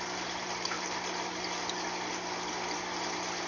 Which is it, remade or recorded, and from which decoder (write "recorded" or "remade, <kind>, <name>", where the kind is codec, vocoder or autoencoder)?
recorded